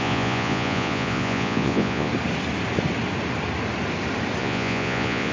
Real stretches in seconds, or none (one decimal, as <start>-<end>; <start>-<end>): 2.1-4.4